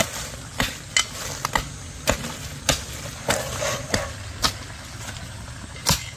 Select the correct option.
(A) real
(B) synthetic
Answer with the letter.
A